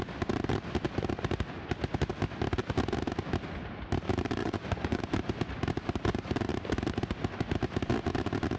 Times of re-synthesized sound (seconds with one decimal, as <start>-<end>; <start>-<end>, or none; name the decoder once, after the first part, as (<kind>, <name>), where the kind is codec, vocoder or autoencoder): 4.4-5.0 (vocoder, Vocos)